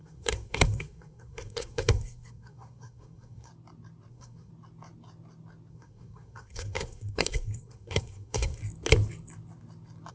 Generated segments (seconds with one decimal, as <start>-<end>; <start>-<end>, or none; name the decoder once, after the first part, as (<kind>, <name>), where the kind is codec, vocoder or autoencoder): 0.0-3.5 (codec, SNAC); 4.1-4.5; 5.7-8.6